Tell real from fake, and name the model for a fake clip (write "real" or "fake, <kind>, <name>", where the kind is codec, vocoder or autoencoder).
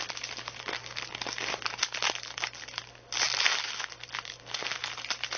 real